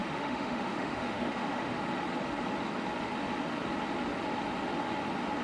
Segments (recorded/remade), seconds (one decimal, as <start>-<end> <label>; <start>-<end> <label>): 0.0-1.8 remade; 1.8-5.4 recorded